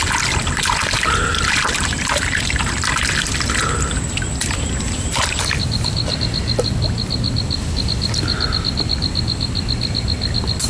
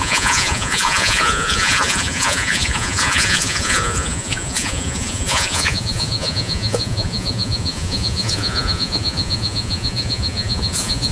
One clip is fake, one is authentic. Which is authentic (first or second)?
first